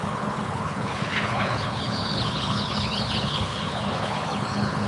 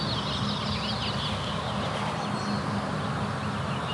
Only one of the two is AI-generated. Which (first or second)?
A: first